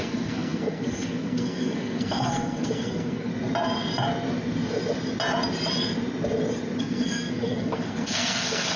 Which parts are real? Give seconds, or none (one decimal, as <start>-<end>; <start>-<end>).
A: 3.3-6.8